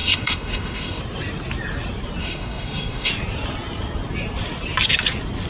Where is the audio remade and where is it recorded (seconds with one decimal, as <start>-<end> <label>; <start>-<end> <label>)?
0.0-1.0 remade; 1.0-2.2 recorded; 2.2-3.1 remade; 3.1-5.5 recorded